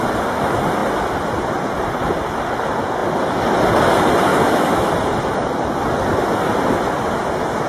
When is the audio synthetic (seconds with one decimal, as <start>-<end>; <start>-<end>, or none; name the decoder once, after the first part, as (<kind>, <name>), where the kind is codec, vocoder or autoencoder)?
4.3-4.9 (autoencoder, DAC-VAE)